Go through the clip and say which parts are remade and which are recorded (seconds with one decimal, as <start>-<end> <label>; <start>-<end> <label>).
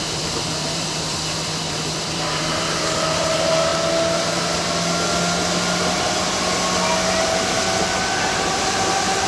0.0-3.7 remade; 3.7-7.8 recorded; 7.8-9.3 remade